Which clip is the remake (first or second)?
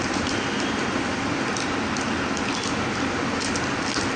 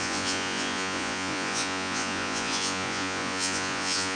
second